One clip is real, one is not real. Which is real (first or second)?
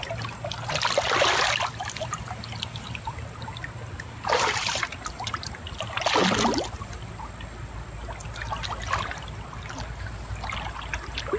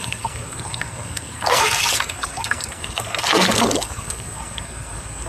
first